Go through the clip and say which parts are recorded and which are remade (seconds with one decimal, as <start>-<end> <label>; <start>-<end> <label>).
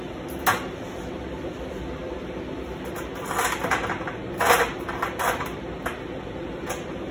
0.0-7.1 recorded